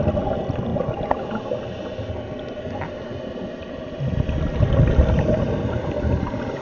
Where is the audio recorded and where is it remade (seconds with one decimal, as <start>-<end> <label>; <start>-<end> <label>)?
0.0-6.6 recorded